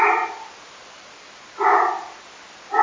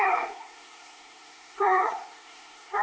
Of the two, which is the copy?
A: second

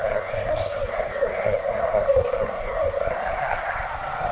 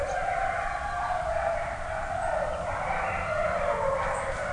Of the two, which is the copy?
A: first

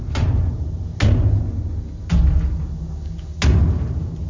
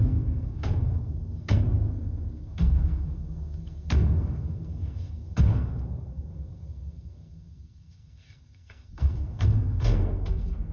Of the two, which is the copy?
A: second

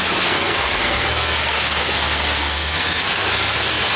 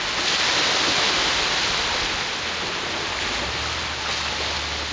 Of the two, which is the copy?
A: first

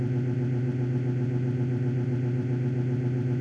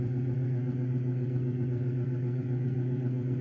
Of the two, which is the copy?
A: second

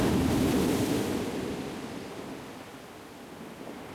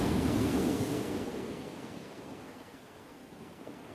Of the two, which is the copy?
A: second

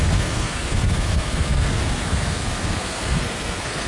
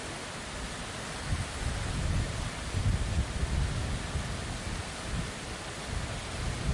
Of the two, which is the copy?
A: first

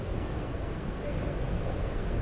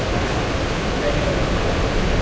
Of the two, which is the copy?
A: first